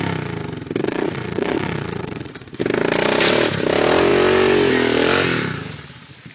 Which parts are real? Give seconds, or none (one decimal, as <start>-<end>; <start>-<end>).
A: 0.0-0.8; 2.6-6.3

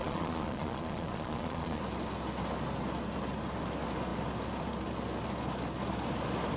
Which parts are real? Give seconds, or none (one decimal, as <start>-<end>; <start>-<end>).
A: 1.8-6.6

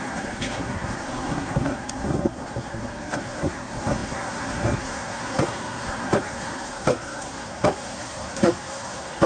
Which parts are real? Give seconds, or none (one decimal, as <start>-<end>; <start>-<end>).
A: none

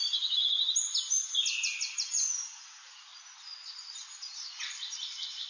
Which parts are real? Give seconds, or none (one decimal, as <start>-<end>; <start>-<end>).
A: 0.0-4.3

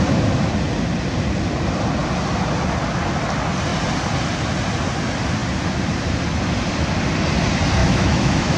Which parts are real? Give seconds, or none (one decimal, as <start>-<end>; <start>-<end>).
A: 0.0-7.8

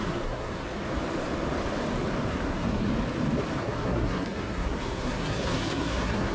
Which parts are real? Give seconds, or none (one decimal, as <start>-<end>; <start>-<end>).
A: 0.6-2.3; 2.9-3.6

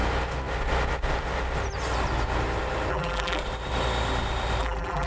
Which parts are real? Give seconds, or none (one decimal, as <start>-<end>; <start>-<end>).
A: 0.0-2.9; 3.4-4.6